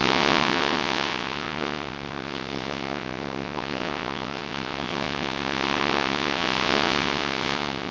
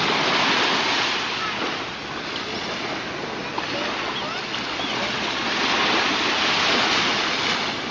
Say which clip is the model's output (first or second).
first